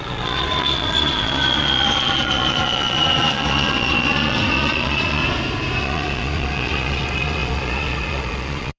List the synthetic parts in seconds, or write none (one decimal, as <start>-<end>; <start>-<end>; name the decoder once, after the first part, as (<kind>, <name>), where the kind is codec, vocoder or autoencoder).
0.0-5.2 (vocoder, Vocos); 5.8-8.8